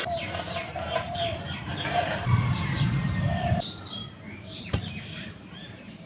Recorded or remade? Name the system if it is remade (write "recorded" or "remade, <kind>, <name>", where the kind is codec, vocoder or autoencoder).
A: remade, vocoder, BigVGAN v2